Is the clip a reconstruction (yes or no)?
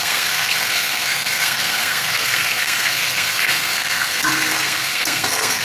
yes